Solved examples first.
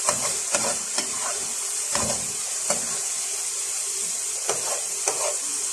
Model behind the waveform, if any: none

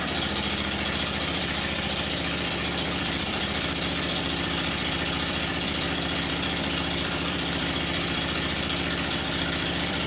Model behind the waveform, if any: vocoder, BigVGAN v2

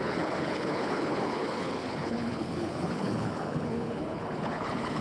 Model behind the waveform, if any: codec, HILCodec